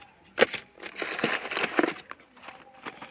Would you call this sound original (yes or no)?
yes